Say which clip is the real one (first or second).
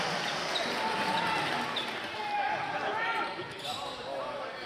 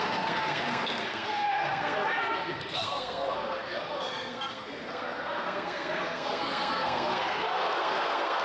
first